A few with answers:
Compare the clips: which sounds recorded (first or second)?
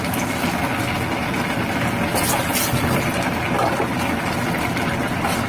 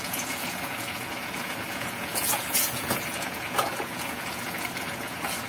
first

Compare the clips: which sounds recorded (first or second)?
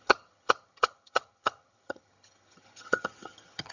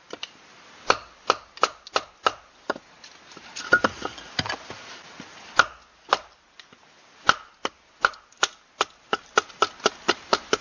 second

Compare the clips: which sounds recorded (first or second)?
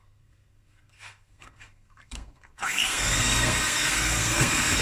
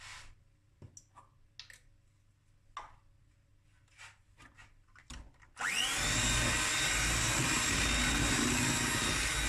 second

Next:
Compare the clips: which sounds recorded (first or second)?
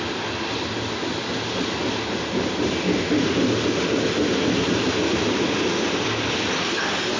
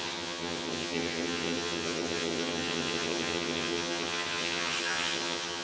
first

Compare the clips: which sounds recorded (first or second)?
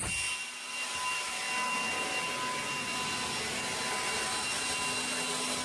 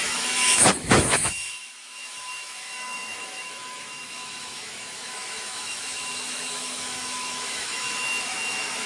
first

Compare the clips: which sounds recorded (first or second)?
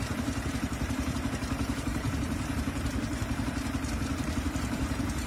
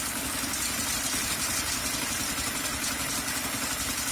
second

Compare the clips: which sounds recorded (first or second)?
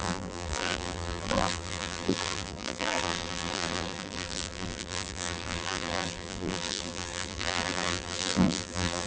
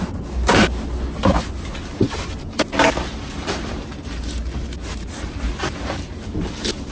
second